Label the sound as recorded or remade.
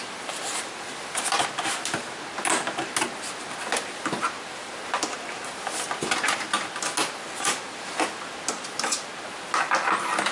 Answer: recorded